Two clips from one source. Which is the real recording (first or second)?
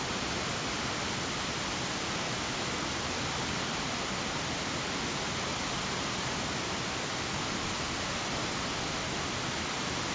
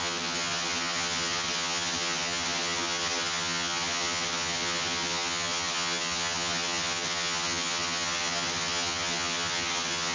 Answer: first